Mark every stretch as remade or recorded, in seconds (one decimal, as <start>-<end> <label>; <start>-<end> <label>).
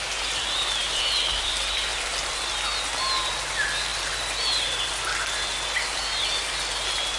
0.0-7.2 recorded